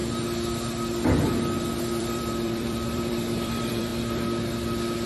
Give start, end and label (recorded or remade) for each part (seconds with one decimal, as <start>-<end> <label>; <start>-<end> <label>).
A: 0.0-1.8 recorded; 1.8-3.9 remade; 3.9-5.1 recorded